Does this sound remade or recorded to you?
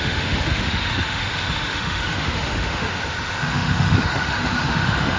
remade